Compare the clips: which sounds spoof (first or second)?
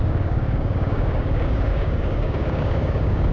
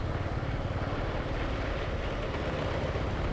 first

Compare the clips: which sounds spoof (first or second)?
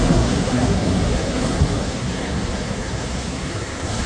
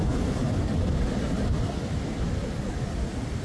first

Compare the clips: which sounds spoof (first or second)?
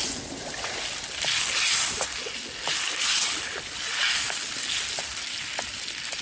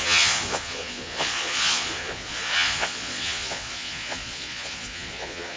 second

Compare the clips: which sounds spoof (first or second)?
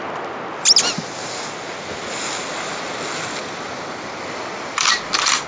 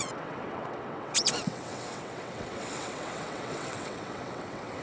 second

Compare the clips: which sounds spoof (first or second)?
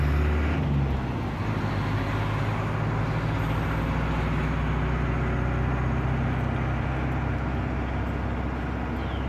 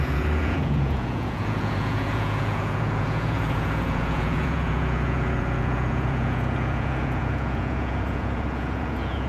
second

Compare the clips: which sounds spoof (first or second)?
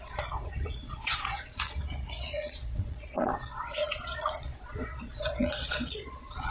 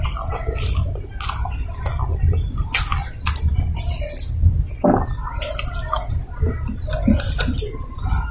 first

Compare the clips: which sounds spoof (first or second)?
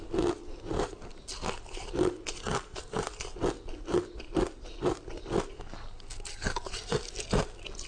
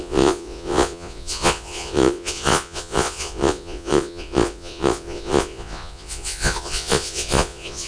second